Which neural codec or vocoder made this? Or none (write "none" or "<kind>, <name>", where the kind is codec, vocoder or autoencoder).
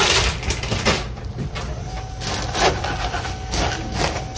none